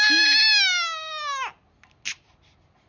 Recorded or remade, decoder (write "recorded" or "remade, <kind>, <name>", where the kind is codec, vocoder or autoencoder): recorded